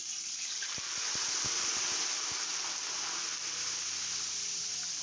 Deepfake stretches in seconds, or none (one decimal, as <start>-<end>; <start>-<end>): none